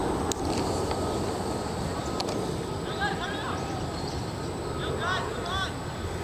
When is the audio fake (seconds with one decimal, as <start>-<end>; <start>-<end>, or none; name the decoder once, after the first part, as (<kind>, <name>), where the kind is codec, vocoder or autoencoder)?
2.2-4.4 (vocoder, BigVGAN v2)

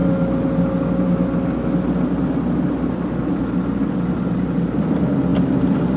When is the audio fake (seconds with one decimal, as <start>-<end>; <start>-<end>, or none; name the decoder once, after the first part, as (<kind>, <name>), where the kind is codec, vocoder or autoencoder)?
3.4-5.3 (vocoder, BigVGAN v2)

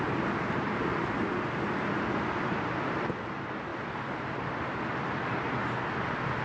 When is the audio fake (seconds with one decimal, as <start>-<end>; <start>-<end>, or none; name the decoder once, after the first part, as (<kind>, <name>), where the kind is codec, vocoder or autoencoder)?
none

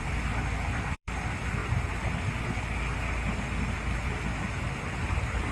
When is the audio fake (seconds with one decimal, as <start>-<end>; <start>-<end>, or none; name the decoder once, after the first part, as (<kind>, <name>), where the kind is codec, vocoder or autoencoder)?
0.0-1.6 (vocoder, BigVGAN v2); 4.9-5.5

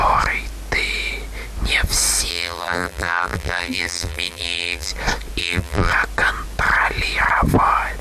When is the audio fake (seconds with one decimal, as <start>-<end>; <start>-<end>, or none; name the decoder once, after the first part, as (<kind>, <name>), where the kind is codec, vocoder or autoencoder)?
2.3-4.9 (vocoder, BigVGAN v2); 5.4-5.9